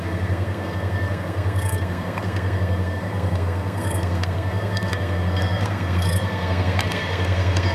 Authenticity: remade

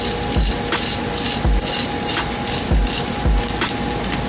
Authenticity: recorded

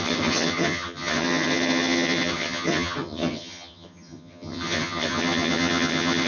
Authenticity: remade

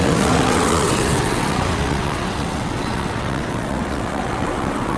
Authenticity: remade